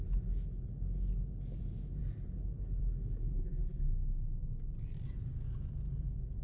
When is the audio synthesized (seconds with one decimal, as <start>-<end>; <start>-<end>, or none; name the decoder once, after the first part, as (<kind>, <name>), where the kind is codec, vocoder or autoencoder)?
3.3-3.9 (vocoder, BigVGAN v2)